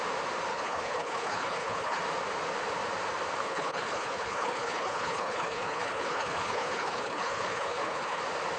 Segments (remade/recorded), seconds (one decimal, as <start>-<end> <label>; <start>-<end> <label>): 0.0-0.5 recorded; 0.5-2.0 remade; 2.0-3.4 recorded; 3.4-8.2 remade; 8.2-8.6 recorded